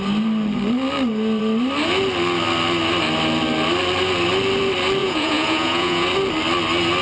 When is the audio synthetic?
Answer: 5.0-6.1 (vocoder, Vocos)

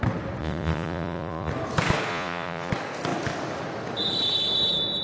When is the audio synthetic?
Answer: 0.4-1.5 (vocoder, Vocos); 2.1-2.7

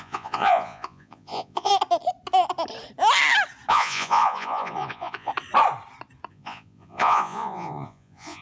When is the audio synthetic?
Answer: 0.0-1.7 (vocoder, Vocos); 3.7-5.3; 6.3-8.4